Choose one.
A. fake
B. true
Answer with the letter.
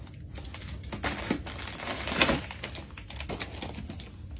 B